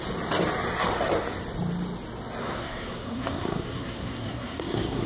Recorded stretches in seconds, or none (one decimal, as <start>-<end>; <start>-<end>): 0.0-2.4